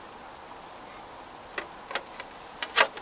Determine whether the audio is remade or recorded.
recorded